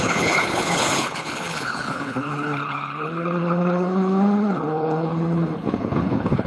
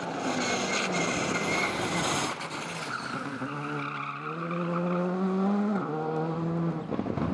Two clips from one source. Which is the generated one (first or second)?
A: first